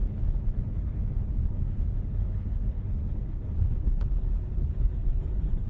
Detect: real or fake fake